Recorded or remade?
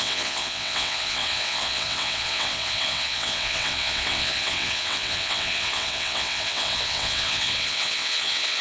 remade